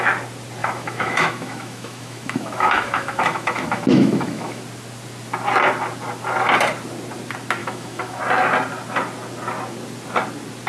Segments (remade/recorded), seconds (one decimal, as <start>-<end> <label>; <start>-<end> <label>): 0.0-0.6 recorded; 0.6-4.6 remade; 4.6-7.6 recorded; 7.6-8.2 remade; 8.2-10.7 recorded